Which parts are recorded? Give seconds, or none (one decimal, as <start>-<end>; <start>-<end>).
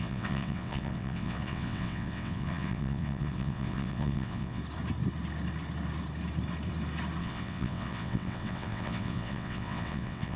4.6-7.2